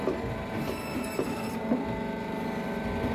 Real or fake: real